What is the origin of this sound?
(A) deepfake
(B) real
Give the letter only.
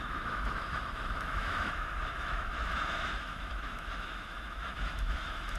A